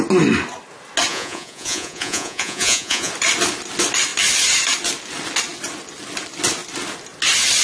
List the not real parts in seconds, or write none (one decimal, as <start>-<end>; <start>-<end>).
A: 1.1-3.1